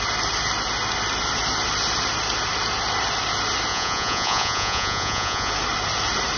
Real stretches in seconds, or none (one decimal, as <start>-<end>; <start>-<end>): 0.0-3.7; 5.5-6.4

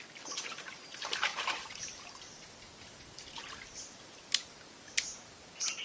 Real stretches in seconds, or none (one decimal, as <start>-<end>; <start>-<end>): 0.0-1.3; 4.0-5.8

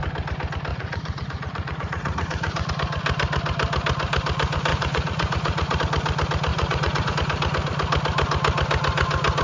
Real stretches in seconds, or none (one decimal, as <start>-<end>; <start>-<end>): 0.0-0.7; 2.7-4.7; 5.8-6.5; 7.1-9.4

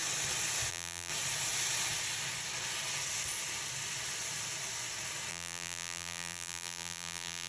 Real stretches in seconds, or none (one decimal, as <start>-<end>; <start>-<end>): 0.0-0.7; 1.1-5.3

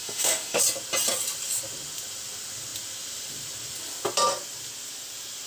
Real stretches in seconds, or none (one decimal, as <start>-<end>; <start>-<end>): 0.6-5.5

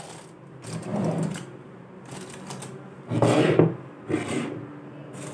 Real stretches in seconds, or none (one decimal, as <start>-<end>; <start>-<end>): 0.0-0.9; 1.9-5.3

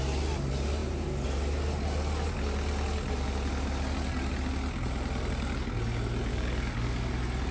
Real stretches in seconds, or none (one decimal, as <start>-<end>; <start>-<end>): 0.0-6.3; 7.1-7.5